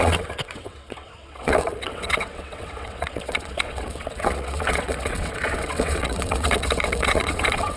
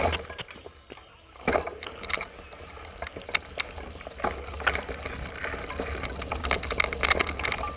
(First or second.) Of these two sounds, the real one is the second